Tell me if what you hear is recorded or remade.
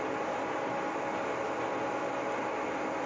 recorded